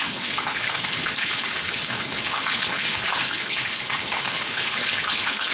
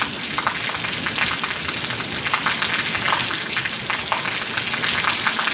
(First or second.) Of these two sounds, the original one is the second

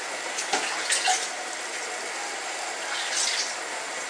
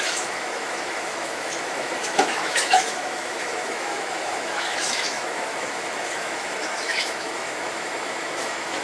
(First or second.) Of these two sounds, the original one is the first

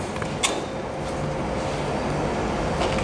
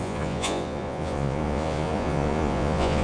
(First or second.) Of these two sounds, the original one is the first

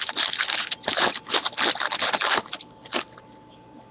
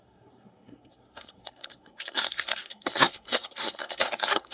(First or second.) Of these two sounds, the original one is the first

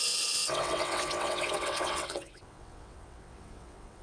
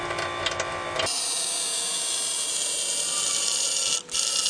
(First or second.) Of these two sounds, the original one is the second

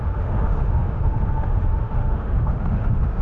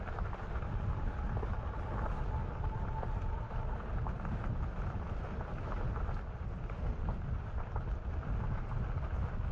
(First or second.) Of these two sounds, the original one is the second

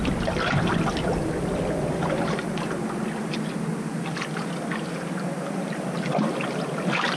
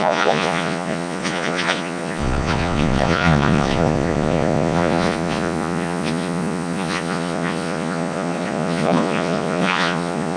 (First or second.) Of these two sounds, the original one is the first